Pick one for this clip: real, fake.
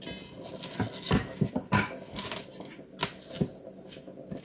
real